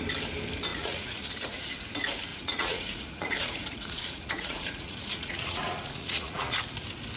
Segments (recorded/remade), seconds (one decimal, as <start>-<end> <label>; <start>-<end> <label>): 0.0-0.7 recorded; 0.7-1.7 remade; 1.7-2.3 recorded; 2.3-6.6 remade; 6.6-7.2 recorded